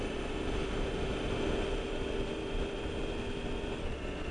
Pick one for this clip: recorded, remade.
recorded